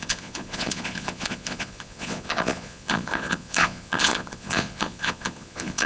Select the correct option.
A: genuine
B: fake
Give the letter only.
B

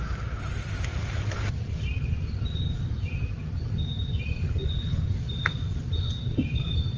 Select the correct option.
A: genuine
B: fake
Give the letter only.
A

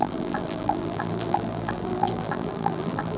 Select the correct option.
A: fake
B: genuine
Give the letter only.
A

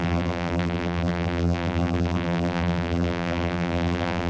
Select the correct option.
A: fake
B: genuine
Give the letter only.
A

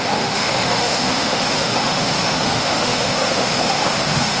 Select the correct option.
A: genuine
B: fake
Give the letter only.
B